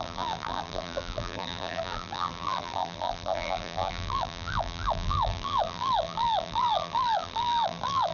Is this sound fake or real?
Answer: fake